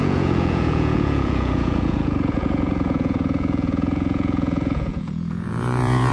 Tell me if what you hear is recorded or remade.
remade